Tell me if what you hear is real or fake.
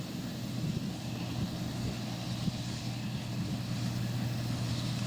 real